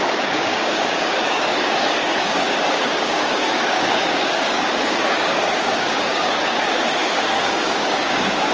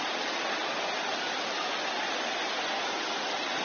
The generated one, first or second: first